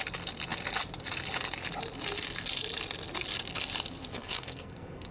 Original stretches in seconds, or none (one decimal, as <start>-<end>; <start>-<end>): 0.0-4.1